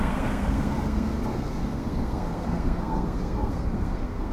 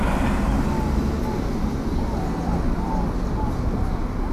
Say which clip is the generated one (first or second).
first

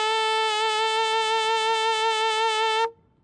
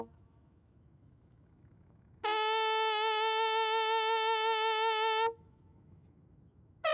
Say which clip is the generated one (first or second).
second